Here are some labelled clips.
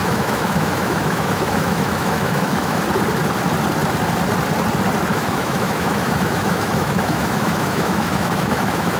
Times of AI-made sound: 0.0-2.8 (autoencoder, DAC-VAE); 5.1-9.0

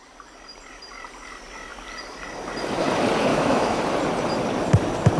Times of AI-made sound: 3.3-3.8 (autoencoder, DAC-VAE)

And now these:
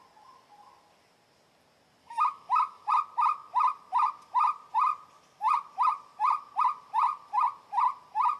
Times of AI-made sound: 2.0-2.9 (autoencoder, DAC-VAE)

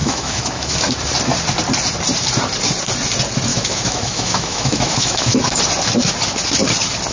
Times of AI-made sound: 0.0-1.0 (autoencoder, DAC-VAE); 3.5-5.6

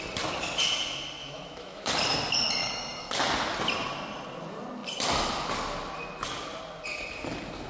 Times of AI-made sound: 1.2-1.9 (autoencoder, DAC-VAE); 2.6-3.1

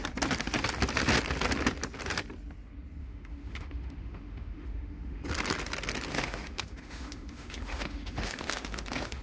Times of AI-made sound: 3.0-5.2 (autoencoder, DAC-VAE); 6.1-9.2